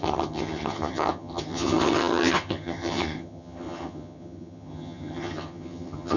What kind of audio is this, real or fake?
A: fake